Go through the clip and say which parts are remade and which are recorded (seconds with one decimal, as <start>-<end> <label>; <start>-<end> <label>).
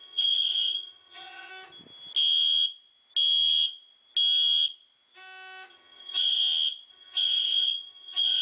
0.0-1.5 remade; 1.5-5.7 recorded; 5.7-6.4 remade; 6.4-6.9 recorded; 6.9-8.4 remade